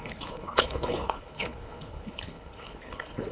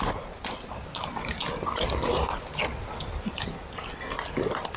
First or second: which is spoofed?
first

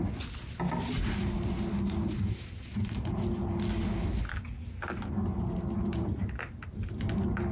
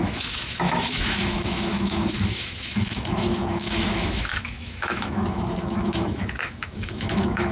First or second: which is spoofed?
second